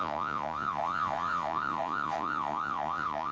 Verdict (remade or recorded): remade